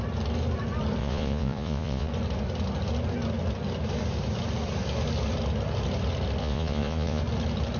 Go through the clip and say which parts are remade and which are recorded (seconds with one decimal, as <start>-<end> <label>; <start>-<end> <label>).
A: 0.0-1.0 recorded; 1.0-2.1 remade; 2.1-6.4 recorded; 6.4-7.2 remade; 7.2-7.8 recorded